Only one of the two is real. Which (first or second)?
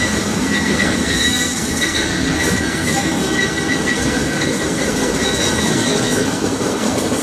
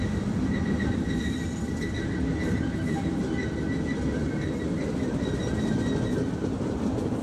second